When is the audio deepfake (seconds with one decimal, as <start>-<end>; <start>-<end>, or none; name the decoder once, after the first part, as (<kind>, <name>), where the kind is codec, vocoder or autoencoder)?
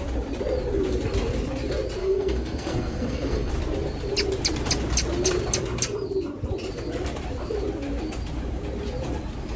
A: 2.0-3.5 (codec, SNAC)